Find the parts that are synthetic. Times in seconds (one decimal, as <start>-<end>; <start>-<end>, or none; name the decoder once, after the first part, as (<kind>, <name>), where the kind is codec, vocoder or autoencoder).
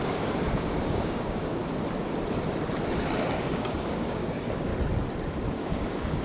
0.0-1.6 (codec, DAC); 3.4-4.7; 5.5-6.2